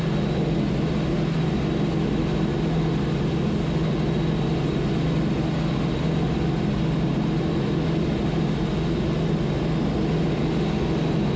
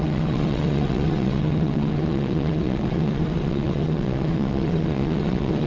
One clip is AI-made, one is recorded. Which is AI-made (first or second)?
second